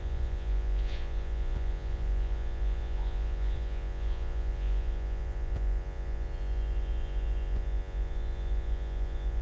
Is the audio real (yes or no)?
no